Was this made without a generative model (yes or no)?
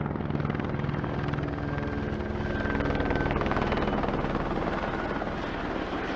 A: yes